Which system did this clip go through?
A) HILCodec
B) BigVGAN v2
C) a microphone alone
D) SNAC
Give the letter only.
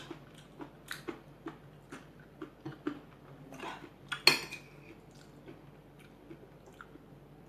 C